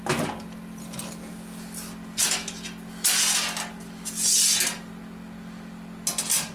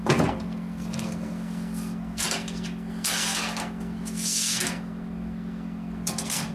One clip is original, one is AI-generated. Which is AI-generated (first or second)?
second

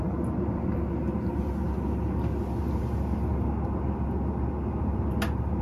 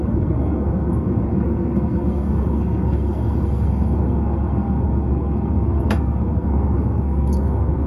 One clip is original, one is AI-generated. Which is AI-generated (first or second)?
second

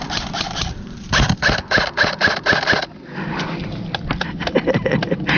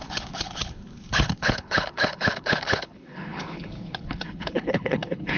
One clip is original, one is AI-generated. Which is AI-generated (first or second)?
second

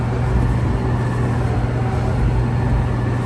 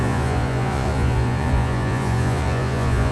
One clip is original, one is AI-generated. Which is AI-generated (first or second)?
second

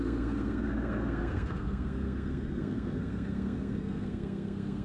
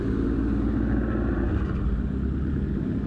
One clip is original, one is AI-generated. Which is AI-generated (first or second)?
first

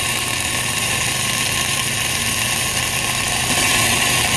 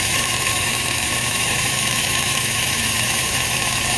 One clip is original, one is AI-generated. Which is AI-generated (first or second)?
second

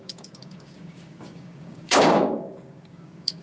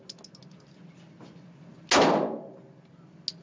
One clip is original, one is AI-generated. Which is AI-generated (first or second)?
first